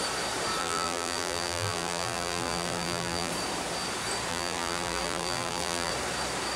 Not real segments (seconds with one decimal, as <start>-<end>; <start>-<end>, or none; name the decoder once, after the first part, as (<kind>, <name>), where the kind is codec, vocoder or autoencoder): 0.6-3.3 (vocoder, BigVGAN v2); 4.3-5.9